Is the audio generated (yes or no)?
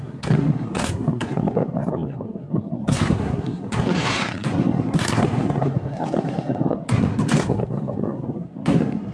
yes